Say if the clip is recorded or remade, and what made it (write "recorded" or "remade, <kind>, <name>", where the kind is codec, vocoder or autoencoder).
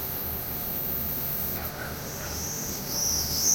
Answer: remade, autoencoder, DAC-VAE